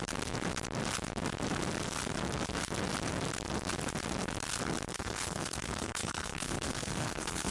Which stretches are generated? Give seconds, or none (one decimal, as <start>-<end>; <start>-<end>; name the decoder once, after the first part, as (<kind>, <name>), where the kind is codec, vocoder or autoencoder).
4.9-7.5 (codec, SNAC)